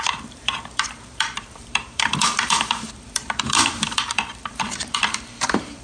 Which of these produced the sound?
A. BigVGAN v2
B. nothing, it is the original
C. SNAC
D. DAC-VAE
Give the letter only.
A